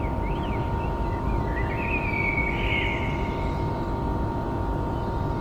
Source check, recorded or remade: recorded